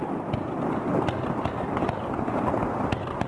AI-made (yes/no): no